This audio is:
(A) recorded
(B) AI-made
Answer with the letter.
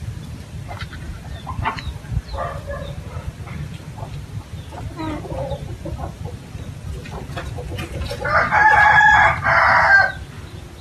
A